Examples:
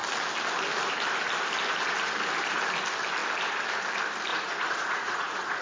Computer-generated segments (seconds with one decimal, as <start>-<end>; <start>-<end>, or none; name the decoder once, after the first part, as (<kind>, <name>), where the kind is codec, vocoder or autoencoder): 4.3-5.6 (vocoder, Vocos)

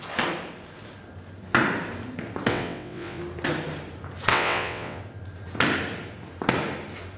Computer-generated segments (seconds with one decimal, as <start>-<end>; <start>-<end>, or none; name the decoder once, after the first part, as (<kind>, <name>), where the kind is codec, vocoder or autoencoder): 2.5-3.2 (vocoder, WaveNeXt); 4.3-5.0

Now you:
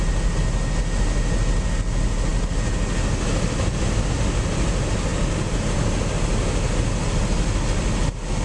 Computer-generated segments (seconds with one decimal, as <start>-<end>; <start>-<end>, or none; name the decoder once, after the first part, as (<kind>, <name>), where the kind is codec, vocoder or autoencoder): none

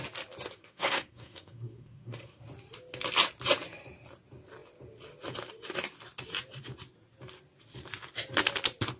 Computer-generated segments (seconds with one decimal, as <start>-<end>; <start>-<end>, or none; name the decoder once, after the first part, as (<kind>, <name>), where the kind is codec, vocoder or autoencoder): 0.6-2.4 (codec, SNAC)

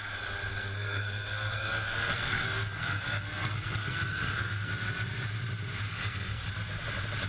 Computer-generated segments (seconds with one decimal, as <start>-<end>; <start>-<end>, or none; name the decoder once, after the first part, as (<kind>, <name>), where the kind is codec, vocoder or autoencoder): 0.5-4.7 (codec, SNAC); 5.9-6.5

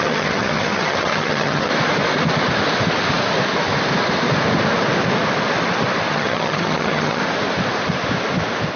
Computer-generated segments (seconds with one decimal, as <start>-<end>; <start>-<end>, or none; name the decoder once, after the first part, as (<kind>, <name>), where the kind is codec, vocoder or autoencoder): 0.0-1.7 (vocoder, HiFi-GAN); 6.1-7.2

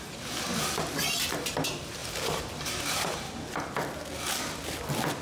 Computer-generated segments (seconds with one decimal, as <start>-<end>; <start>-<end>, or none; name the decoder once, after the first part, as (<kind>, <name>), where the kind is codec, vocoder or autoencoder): 2.0-3.7 (vocoder, BigVGAN v2)

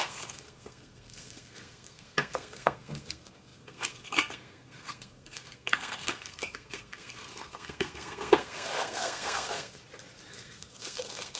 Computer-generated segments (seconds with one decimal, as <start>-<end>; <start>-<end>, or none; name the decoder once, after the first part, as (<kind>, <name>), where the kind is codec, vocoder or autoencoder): 0.0-9.8 (codec, SNAC); 10.3-11.4